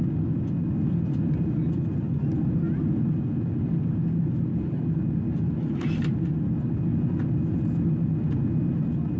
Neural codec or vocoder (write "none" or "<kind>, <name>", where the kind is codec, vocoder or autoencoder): none